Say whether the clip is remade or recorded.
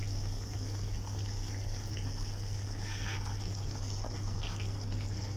remade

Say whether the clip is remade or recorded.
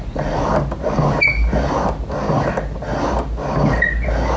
recorded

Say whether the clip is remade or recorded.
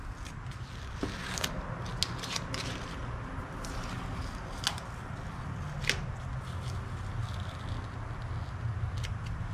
recorded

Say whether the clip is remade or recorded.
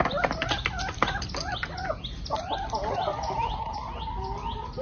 recorded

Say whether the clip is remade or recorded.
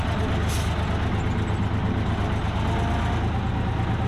recorded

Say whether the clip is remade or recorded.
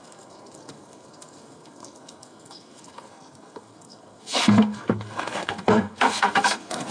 remade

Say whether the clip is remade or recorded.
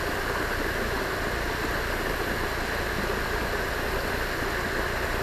recorded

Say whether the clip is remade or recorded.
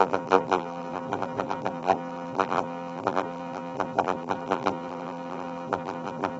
remade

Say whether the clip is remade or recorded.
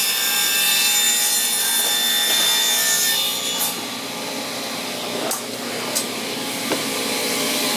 recorded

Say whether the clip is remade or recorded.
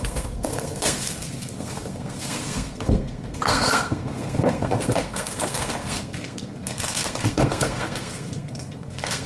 remade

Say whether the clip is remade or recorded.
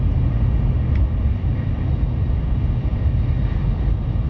recorded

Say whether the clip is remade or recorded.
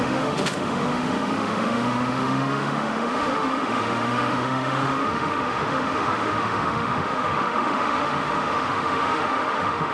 remade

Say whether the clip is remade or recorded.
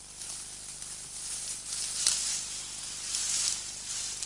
recorded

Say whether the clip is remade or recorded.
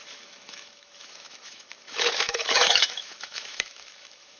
remade